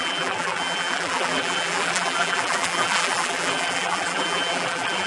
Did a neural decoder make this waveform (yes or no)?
yes